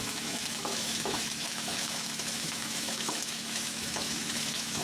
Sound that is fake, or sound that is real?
fake